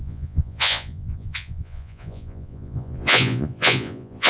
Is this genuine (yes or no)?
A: no